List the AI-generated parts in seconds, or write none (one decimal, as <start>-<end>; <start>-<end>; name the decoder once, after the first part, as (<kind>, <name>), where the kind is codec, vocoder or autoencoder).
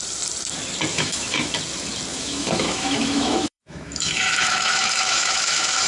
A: 0.9-1.5 (autoencoder, DAC-VAE); 2.1-5.9